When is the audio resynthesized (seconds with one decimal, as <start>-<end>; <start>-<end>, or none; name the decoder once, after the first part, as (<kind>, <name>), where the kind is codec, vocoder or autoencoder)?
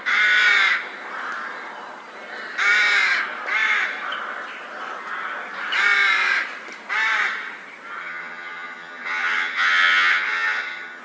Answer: 8.0-11.0 (vocoder, HiFi-GAN)